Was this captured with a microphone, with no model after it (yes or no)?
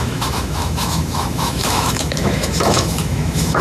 no